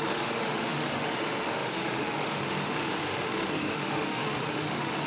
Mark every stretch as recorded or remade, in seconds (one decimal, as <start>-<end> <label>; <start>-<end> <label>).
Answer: 0.0-5.1 remade